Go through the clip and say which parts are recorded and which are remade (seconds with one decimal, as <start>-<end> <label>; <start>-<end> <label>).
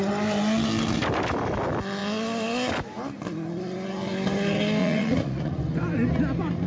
0.0-4.8 recorded; 4.8-5.6 remade; 5.6-6.7 recorded